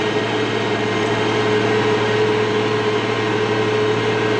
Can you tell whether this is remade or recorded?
recorded